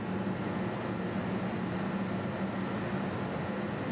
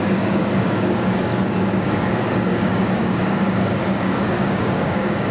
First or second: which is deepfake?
second